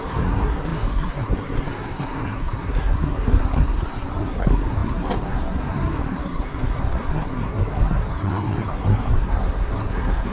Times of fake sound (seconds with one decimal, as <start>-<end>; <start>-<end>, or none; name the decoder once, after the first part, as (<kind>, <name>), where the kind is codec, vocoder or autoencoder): 0.0-10.3 (codec, SNAC)